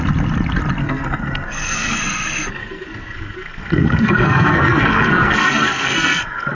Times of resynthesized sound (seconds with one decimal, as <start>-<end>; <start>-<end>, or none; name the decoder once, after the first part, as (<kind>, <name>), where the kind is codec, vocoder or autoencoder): 0.8-2.0 (codec, SNAC); 2.6-6.5